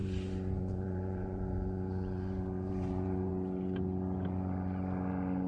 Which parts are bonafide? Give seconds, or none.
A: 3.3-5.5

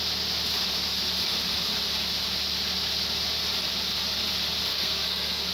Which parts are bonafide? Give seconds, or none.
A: 0.0-4.7